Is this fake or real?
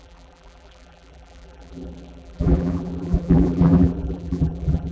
fake